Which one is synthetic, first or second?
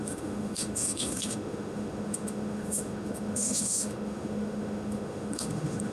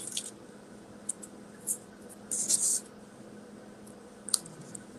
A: first